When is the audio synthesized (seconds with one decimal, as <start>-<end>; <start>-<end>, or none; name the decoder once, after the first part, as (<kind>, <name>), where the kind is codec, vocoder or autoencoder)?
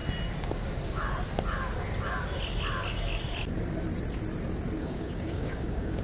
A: 4.8-6.0 (codec, DAC)